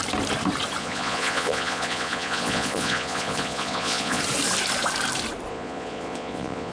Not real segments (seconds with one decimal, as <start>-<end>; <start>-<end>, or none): 0.8-4.2; 5.5-6.7